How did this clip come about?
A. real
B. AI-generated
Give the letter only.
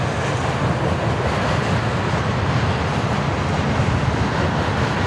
A